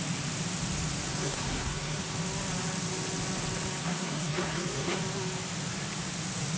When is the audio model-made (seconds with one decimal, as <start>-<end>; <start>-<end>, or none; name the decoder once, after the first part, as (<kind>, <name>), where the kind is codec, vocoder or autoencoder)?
1.1-2.0 (codec, SNAC); 3.8-5.0